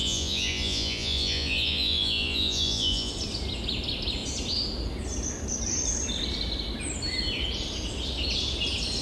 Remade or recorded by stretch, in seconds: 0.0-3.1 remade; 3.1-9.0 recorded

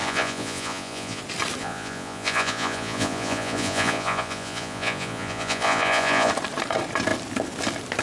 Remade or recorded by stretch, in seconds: 0.0-1.2 remade; 1.2-1.6 recorded; 1.6-6.3 remade; 6.3-8.0 recorded

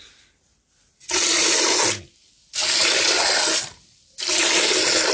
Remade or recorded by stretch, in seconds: 0.0-5.1 recorded